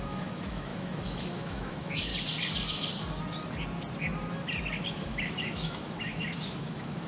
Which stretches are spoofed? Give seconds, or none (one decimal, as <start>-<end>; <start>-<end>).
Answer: 0.0-2.1; 4.9-7.1